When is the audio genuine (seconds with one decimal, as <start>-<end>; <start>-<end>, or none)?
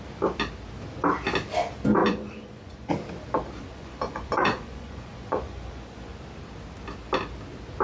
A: 0.0-2.0; 2.9-3.7; 6.1-7.8